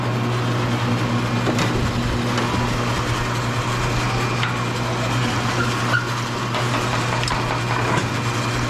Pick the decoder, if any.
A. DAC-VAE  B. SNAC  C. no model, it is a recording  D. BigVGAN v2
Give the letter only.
C